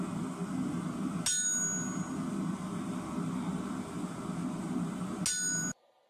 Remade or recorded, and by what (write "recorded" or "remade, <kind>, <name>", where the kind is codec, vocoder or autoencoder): recorded